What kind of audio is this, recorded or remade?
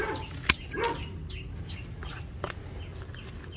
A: recorded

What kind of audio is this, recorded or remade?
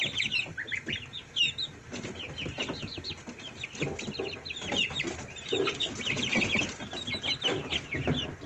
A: recorded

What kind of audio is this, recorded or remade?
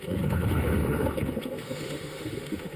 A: remade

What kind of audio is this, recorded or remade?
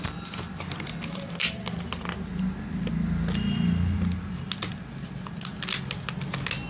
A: recorded